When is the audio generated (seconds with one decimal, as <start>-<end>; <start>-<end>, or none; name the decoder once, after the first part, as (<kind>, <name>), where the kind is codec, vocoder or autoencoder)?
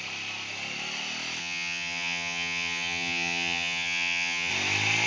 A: 1.4-4.5 (vocoder, HiFi-GAN)